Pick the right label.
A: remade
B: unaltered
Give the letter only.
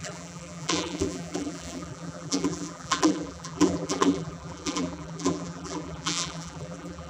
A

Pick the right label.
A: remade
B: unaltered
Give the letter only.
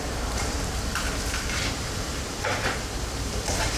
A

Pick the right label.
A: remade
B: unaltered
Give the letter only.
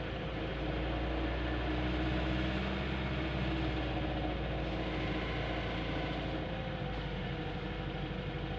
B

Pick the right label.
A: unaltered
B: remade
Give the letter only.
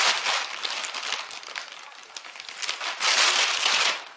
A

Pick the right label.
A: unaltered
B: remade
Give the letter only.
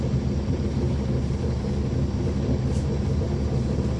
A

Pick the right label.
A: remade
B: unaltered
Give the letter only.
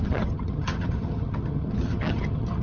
A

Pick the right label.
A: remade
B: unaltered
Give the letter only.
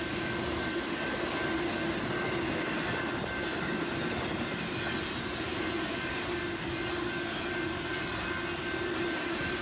B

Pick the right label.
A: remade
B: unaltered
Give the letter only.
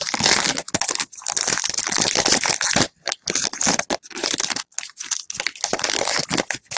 B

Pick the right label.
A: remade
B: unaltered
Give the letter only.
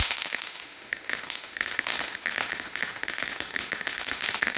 A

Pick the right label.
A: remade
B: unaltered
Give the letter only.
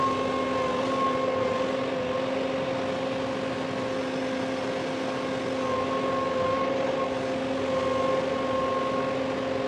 B